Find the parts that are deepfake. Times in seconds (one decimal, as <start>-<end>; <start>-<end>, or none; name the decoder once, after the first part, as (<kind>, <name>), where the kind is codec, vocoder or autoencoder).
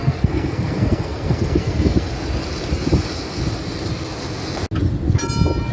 0.0-2.1 (codec, SNAC)